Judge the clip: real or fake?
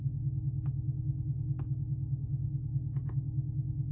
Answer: real